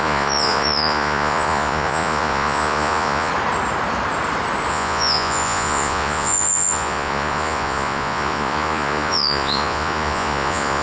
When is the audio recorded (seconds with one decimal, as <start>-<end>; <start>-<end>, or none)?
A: 3.3-4.7